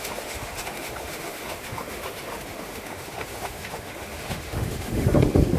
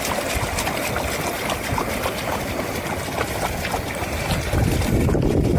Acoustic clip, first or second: second